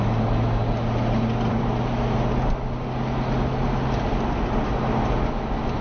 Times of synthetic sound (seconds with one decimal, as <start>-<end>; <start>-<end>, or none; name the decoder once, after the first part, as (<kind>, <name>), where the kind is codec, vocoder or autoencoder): none